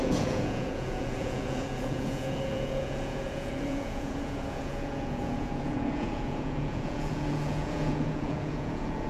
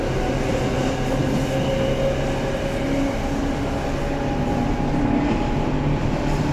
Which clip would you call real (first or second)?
second